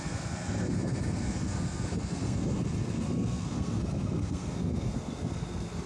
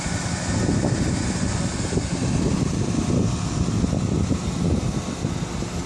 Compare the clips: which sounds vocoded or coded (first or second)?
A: first